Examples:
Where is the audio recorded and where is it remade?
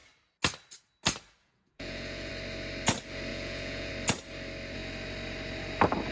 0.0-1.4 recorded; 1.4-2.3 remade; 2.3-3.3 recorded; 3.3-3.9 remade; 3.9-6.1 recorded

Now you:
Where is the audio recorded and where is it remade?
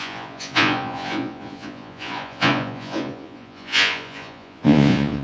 0.0-5.2 remade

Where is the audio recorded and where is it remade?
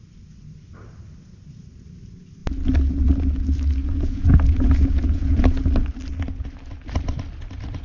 0.0-3.8 recorded; 3.8-5.6 remade; 5.6-7.8 recorded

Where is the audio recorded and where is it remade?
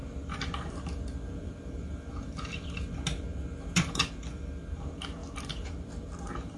0.0-6.6 recorded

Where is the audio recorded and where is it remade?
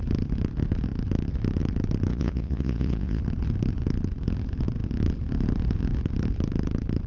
0.0-2.1 recorded; 2.1-3.2 remade; 3.2-7.1 recorded